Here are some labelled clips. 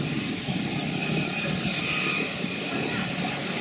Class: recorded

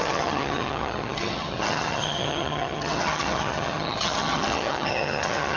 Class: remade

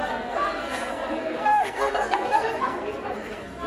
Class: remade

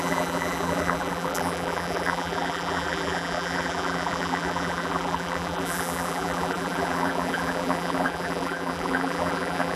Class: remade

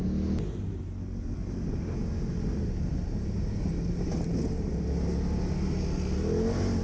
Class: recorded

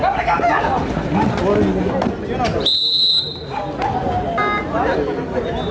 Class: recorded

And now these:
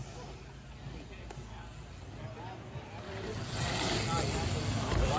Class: recorded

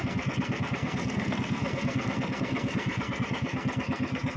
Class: remade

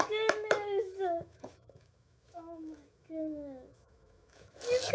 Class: remade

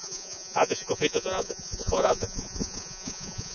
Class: remade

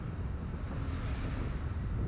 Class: recorded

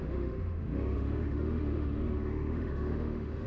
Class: remade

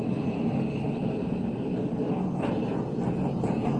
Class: recorded